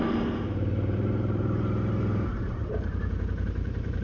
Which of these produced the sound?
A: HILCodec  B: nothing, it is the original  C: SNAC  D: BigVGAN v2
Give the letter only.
D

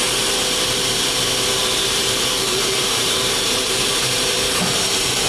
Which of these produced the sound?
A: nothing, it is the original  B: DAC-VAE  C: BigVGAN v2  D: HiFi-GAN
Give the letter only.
C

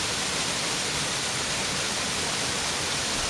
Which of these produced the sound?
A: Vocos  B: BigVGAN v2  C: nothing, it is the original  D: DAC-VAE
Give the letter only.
C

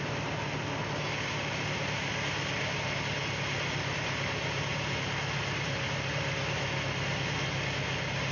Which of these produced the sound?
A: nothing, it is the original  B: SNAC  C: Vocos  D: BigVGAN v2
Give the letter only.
A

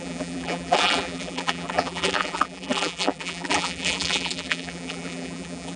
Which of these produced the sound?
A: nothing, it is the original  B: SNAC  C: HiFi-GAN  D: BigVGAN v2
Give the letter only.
D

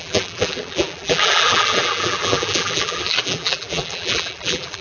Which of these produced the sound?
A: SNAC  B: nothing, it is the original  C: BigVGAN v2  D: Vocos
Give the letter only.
C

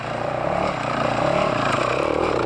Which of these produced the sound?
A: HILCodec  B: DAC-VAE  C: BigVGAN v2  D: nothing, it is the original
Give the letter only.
C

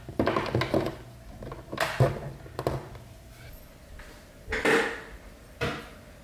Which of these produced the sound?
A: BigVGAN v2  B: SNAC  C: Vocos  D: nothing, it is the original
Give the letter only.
D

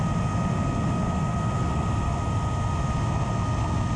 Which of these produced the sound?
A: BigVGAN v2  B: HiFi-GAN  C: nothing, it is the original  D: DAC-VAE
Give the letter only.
C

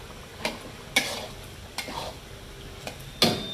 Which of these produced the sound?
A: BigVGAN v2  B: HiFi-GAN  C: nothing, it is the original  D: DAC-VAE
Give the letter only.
C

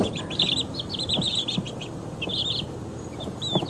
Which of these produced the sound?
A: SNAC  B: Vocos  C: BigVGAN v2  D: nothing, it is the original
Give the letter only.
C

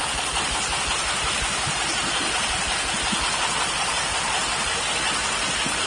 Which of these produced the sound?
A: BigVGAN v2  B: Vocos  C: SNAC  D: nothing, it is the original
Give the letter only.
D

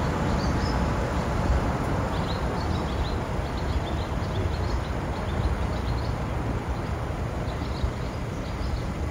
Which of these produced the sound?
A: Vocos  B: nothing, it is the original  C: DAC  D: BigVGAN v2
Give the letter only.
B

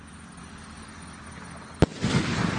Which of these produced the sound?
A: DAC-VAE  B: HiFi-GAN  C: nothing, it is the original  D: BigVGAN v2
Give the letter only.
C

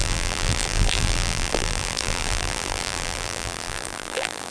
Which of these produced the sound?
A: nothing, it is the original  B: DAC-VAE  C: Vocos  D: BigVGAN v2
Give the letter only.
D